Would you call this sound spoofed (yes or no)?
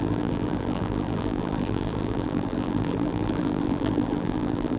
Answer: yes